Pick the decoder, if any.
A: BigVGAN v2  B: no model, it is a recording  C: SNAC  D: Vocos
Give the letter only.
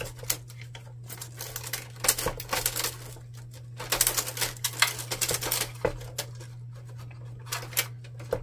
B